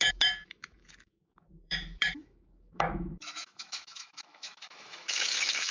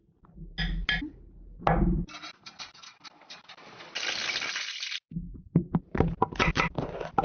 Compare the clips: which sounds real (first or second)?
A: second